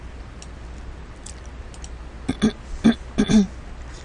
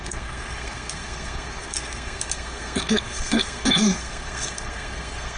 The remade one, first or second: second